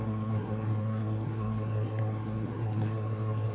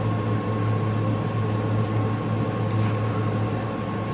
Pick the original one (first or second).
second